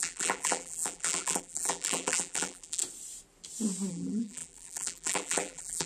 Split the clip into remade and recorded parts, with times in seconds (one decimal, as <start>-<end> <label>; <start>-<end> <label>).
0.0-2.8 remade; 2.8-3.9 recorded; 3.9-5.9 remade